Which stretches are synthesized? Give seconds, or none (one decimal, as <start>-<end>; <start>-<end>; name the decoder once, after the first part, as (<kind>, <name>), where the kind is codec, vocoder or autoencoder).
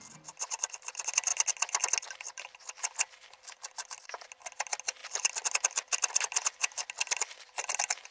none